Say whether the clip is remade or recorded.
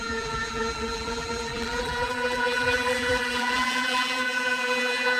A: remade